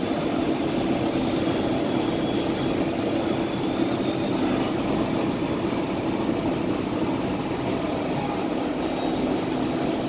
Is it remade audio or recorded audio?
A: recorded